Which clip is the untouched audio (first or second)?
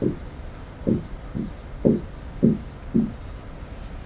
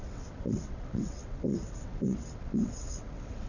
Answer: first